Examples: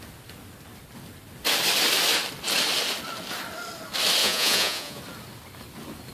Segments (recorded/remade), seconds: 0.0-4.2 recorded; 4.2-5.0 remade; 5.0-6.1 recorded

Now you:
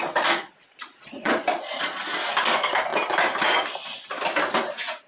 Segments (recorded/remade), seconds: 0.0-0.4 recorded; 0.4-2.0 remade; 2.0-5.1 recorded

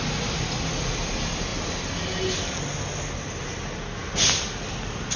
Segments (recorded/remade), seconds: 0.0-5.2 recorded

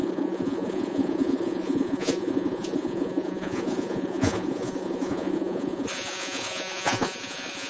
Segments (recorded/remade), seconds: 0.0-7.7 remade